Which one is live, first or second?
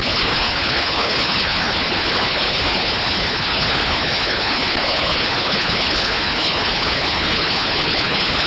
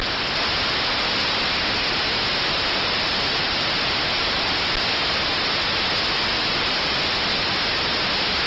second